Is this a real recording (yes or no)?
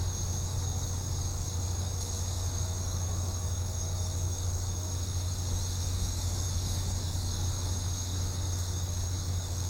no